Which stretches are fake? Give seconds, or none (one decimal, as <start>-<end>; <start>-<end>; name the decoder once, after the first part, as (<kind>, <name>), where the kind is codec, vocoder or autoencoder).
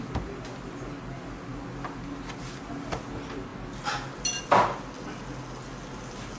none